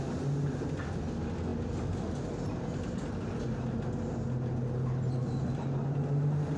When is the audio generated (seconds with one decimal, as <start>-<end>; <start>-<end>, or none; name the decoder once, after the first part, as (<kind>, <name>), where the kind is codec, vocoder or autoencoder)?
none